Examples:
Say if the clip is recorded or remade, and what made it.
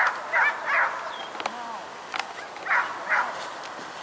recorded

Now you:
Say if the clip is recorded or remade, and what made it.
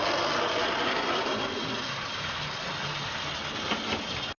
recorded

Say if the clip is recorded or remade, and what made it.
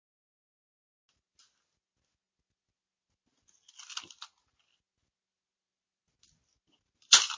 recorded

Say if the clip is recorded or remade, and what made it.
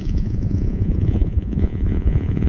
remade, vocoder, Vocos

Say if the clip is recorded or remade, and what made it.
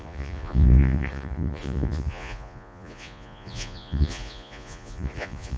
remade, vocoder, Vocos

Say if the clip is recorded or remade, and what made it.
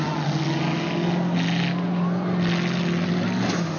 recorded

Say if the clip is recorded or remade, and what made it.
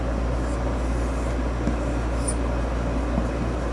recorded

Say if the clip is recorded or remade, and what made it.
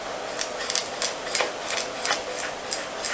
recorded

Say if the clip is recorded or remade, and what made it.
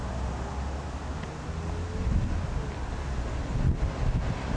recorded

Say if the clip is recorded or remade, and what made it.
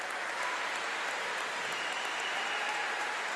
recorded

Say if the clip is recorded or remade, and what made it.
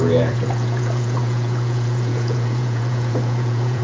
remade, vocoder, Vocos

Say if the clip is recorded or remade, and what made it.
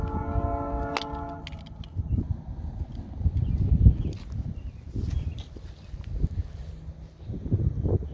recorded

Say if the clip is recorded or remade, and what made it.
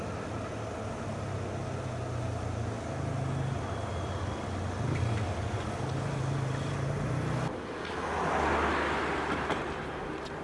recorded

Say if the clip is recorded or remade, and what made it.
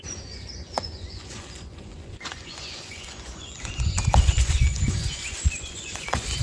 remade, vocoder, Vocos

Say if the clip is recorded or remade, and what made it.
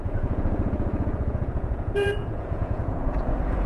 remade, vocoder, Vocos